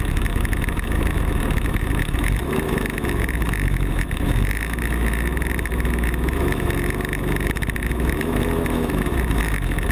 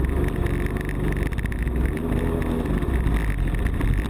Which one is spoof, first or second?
first